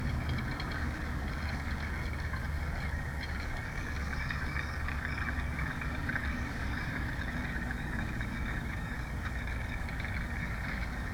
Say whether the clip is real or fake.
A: fake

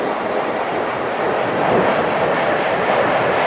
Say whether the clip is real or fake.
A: real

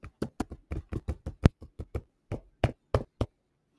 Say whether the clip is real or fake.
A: real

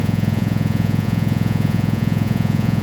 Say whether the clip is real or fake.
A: fake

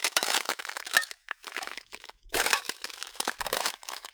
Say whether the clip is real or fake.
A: fake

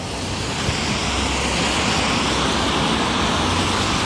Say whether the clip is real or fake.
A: real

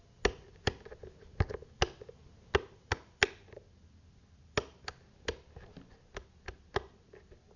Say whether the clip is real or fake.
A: real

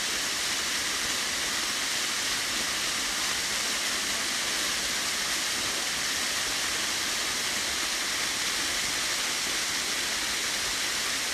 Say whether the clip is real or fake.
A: real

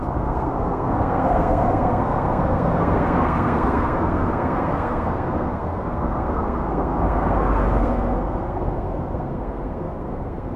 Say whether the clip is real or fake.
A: fake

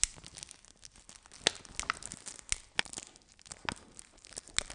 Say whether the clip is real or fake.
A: real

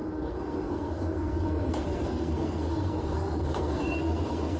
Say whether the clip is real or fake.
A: fake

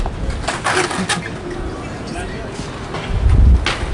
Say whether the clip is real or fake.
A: real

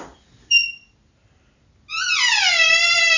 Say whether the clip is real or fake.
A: real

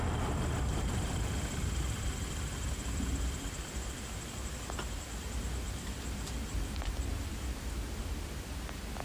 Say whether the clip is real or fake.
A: fake